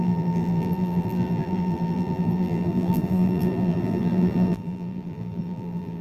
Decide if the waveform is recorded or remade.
remade